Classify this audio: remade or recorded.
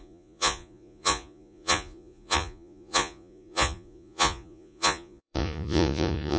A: remade